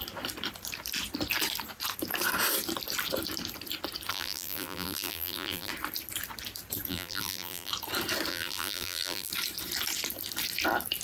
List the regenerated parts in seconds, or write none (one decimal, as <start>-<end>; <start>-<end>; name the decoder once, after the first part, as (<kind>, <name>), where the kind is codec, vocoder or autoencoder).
4.1-5.7 (vocoder, BigVGAN v2); 6.9-7.7; 8.3-9.3